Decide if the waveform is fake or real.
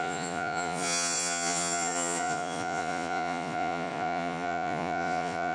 fake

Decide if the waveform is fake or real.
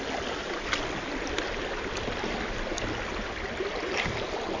real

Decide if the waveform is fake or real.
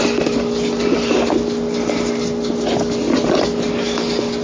real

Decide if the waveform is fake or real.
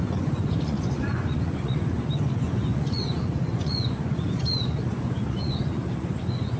fake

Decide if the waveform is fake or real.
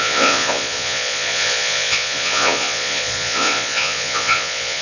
fake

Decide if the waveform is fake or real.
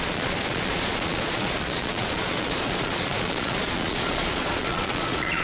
fake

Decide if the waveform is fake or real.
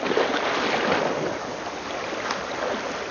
real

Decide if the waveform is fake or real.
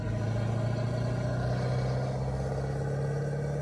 real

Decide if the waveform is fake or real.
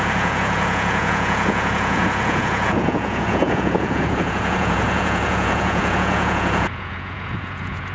fake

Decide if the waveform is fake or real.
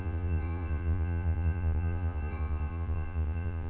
fake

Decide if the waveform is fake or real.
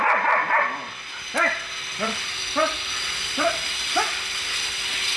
real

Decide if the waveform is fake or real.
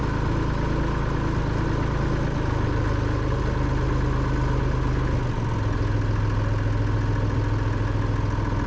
real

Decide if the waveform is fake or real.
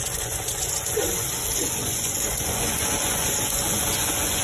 fake